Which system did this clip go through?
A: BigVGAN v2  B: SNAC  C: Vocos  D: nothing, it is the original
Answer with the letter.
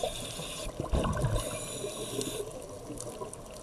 D